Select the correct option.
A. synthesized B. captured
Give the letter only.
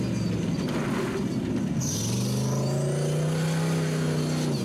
B